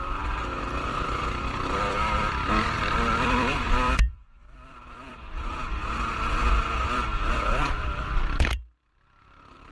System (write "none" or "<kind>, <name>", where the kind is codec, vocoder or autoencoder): vocoder, BigVGAN v2